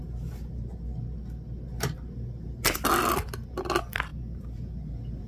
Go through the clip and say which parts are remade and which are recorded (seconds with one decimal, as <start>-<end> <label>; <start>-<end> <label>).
0.0-4.1 recorded; 4.1-5.3 remade